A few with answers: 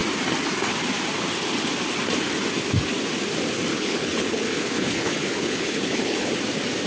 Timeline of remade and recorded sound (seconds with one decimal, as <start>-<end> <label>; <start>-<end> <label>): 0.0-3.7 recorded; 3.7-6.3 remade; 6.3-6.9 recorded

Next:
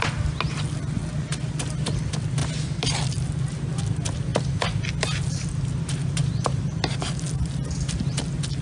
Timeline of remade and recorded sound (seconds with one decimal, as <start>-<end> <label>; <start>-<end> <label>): 0.0-8.6 recorded

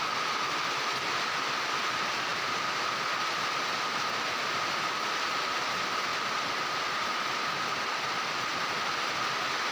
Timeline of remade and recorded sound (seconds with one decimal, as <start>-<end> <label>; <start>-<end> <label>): 0.0-9.7 recorded

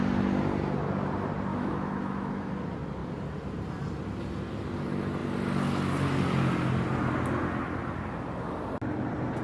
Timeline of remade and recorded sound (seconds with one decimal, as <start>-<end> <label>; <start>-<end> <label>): 0.0-1.5 recorded; 1.5-2.4 remade; 2.4-9.4 recorded

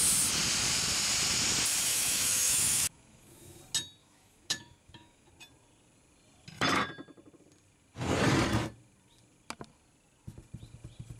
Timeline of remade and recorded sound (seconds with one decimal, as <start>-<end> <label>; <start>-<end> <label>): 0.0-1.9 recorded; 1.9-3.6 remade; 3.6-4.0 recorded; 4.0-5.3 remade; 5.3-11.2 recorded

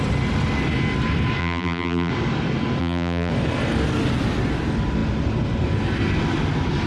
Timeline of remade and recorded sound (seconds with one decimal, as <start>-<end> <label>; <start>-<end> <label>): 0.0-1.4 recorded; 1.4-2.1 remade; 2.1-2.8 recorded; 2.8-3.3 remade; 3.3-6.9 recorded

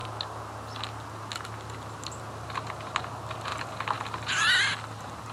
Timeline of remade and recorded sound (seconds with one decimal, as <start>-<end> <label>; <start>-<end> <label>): 0.0-5.3 recorded